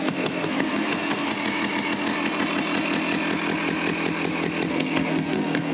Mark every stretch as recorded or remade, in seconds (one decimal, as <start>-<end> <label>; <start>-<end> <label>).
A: 0.0-1.3 remade; 1.3-4.7 recorded; 4.7-5.7 remade